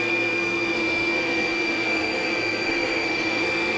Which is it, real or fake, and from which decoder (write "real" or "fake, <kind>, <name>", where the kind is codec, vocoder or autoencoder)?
fake, codec, SNAC